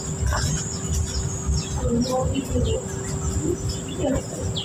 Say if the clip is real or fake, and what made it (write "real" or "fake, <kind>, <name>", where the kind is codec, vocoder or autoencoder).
real